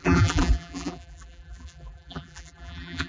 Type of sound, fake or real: fake